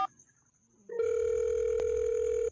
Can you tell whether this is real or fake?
real